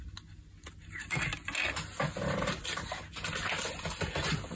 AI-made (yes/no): no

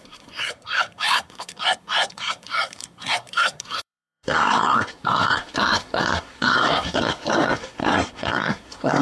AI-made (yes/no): yes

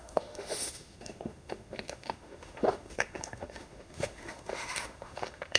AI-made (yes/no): yes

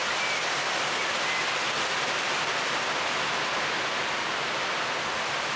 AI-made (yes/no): no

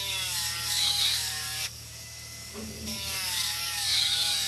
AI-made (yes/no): yes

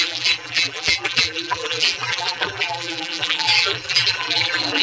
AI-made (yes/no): yes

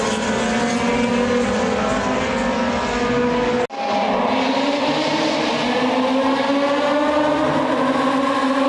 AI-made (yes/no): no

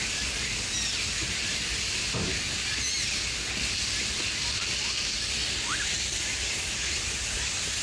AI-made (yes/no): no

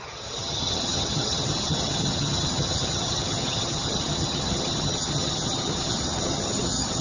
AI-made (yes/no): yes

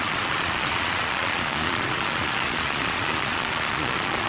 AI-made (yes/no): yes